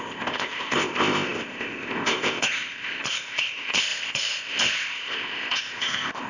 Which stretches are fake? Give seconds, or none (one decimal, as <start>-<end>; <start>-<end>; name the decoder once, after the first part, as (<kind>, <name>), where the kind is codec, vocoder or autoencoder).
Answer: 0.0-6.3 (codec, ZipCodec)